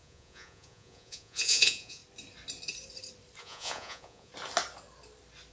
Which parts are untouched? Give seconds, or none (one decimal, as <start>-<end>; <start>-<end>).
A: 2.0-3.4; 4.3-5.5